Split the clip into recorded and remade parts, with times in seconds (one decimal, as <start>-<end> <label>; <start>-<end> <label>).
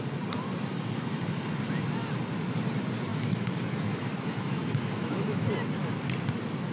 0.0-3.1 recorded; 3.1-5.5 remade; 5.5-6.7 recorded